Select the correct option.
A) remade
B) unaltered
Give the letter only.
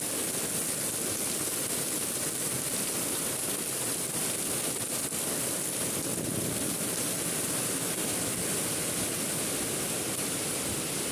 B